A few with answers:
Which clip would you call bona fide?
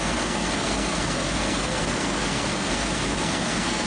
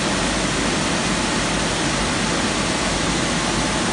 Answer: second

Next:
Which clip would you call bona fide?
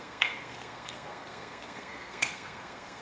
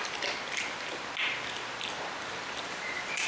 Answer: second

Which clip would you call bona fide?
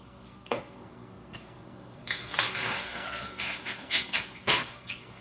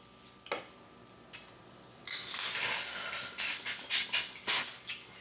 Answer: second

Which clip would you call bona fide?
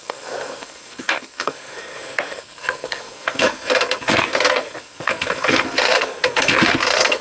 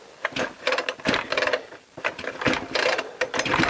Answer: second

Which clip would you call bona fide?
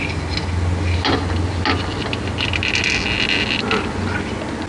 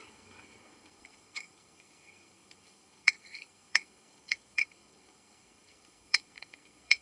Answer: first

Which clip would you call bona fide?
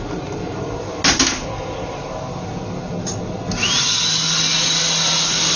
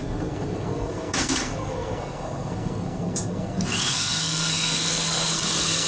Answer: first